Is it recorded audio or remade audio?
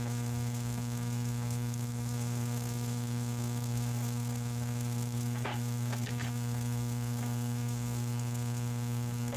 remade